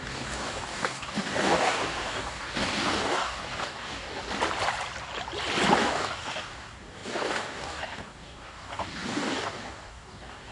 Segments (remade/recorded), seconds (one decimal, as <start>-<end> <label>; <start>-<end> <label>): 0.0-4.2 remade; 4.2-5.8 recorded; 5.8-10.5 remade